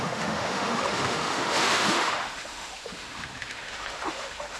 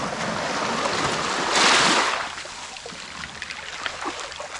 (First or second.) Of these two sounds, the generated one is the first